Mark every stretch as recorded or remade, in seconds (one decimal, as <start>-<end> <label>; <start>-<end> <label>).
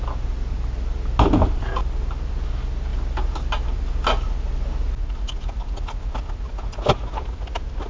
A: 0.0-7.9 recorded